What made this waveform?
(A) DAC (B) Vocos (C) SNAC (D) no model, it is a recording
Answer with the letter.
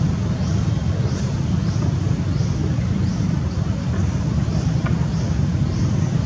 D